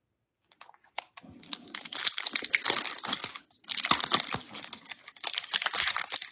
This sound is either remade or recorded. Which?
recorded